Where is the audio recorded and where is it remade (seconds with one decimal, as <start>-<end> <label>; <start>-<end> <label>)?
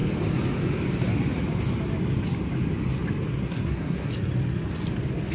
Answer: 0.0-3.3 recorded; 3.3-4.1 remade; 4.1-5.3 recorded